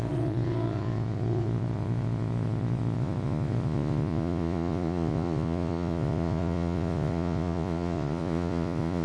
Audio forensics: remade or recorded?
remade